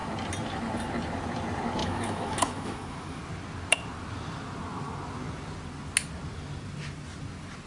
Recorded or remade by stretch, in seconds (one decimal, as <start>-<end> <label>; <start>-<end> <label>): 0.0-1.8 recorded; 1.8-3.2 remade; 3.2-7.7 recorded